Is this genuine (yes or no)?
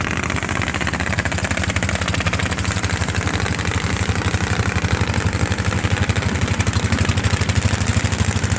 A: yes